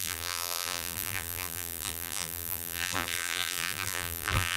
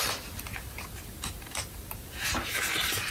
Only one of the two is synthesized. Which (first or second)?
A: first